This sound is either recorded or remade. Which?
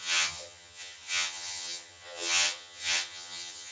remade